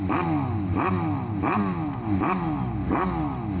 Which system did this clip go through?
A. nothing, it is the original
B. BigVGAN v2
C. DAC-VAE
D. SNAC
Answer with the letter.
A